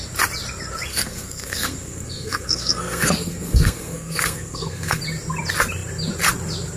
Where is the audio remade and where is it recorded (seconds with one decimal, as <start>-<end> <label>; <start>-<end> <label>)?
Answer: 0.0-0.9 recorded; 0.9-5.0 remade; 5.0-6.8 recorded